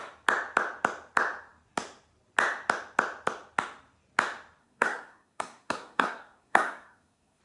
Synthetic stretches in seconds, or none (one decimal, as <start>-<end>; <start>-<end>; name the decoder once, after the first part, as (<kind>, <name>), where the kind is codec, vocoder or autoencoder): 4.6-7.4 (codec, SNAC)